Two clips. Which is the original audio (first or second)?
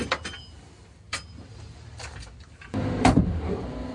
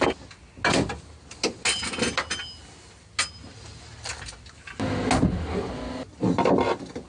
second